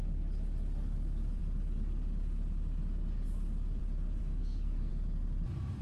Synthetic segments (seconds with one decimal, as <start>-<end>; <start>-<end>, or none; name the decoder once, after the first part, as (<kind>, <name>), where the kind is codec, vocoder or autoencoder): 4.2-4.9 (codec, SNAC)